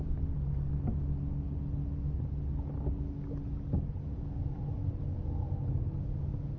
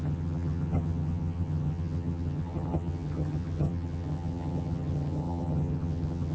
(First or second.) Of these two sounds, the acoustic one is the first